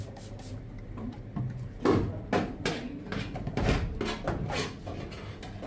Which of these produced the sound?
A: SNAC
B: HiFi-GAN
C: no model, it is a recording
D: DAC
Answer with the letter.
C